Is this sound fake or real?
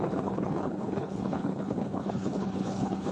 fake